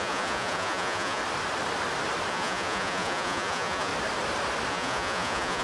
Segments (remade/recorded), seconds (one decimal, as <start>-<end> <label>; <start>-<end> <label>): 0.0-1.2 remade; 1.2-2.3 recorded; 2.3-3.9 remade; 3.9-4.7 recorded; 4.7-5.6 remade